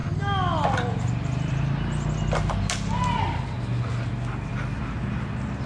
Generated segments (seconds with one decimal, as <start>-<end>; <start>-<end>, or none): none